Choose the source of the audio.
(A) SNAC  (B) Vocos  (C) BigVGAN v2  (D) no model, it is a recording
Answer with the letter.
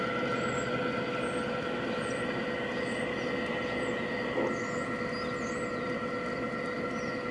D